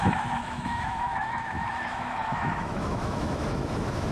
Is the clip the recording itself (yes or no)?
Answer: no